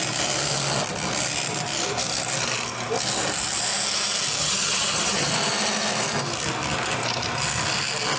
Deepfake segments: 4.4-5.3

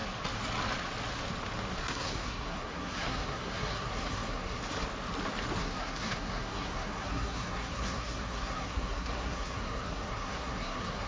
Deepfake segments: 1.8-4.6; 5.6-11.1

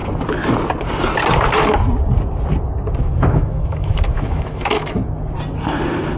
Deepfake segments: 3.0-5.0

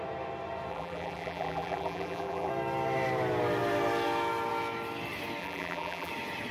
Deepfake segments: 0.7-2.5; 5.4-6.1

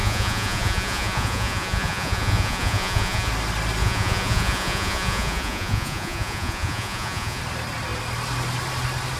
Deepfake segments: 0.0-3.3; 3.8-7.4